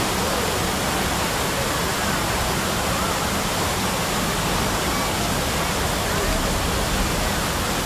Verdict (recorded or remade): recorded